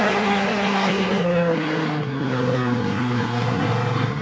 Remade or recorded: remade